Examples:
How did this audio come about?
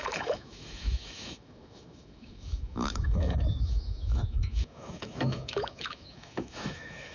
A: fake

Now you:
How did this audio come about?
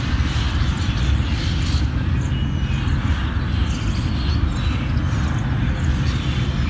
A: real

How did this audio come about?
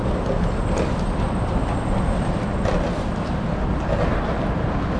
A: real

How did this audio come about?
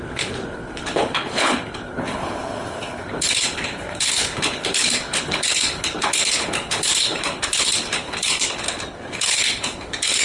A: fake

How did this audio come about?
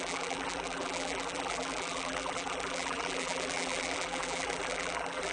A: fake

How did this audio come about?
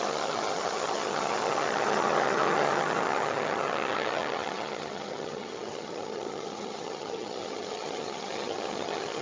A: fake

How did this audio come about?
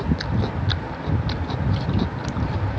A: real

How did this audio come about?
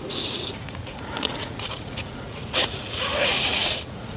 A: fake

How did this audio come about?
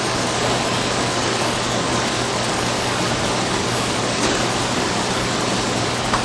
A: fake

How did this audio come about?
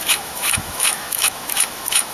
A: fake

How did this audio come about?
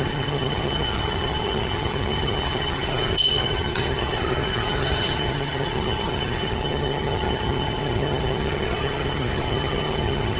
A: fake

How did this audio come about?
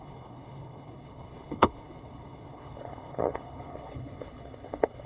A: fake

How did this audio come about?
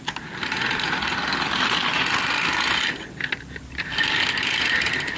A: real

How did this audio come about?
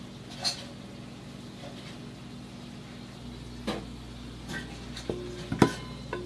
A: real